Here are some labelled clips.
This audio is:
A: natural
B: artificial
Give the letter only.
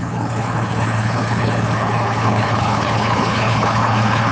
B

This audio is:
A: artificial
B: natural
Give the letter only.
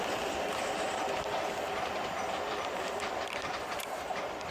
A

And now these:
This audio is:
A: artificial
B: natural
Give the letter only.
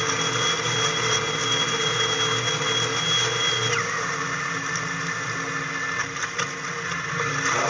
B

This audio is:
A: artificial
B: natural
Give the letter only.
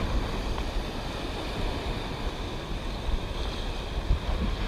B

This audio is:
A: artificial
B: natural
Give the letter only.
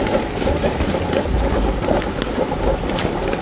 B